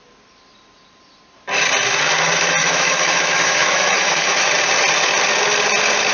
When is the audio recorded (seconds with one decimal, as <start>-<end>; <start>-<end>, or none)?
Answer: 0.0-2.6; 4.5-6.1